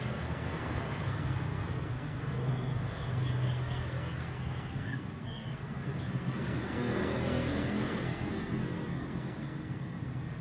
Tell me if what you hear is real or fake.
fake